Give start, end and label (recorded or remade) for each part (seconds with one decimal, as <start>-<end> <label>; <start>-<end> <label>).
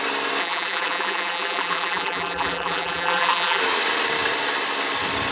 0.0-0.4 recorded; 0.4-3.6 remade; 3.6-5.3 recorded